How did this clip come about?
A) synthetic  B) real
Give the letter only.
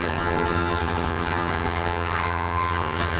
A